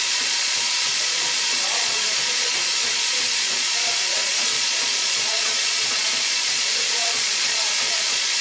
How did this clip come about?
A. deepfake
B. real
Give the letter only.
A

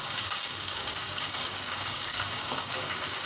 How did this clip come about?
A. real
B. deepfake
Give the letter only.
B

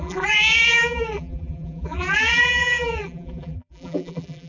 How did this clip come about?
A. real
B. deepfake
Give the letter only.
B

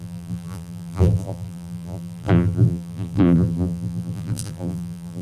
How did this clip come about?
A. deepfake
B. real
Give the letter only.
A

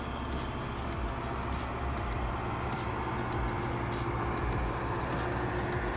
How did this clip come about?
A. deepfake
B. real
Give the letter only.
B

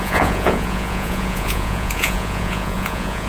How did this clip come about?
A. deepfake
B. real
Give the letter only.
A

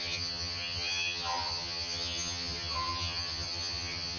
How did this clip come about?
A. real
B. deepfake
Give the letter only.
B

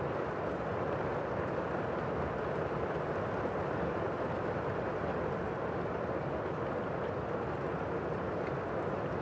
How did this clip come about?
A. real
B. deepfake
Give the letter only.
A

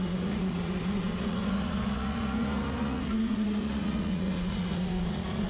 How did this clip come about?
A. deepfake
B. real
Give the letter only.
A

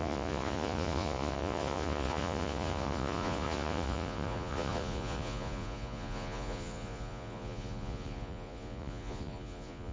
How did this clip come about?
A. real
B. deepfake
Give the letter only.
B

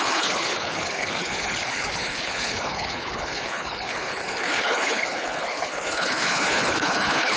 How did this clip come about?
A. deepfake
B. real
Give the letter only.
A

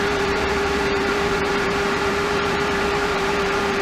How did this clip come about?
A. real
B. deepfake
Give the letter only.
B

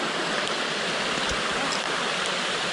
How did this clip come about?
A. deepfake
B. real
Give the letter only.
A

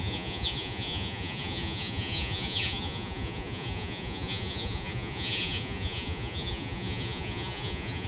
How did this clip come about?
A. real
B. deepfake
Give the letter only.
B